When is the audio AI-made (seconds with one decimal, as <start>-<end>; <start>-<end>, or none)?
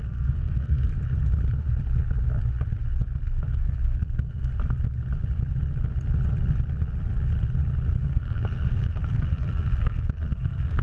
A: 0.0-0.9; 3.5-4.5; 8.0-10.8